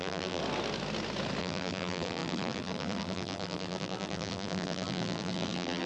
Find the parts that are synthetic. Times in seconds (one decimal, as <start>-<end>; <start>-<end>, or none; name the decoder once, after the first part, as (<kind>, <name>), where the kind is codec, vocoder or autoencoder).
0.0-0.4 (vocoder, BigVGAN v2); 1.4-5.9